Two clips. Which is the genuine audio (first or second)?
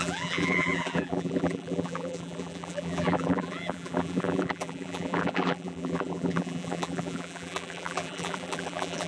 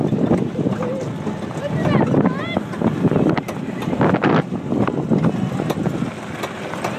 second